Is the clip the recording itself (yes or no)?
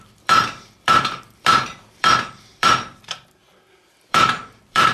no